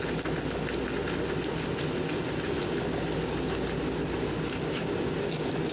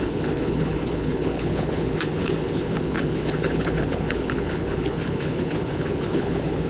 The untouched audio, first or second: first